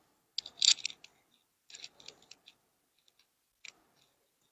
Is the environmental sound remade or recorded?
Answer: recorded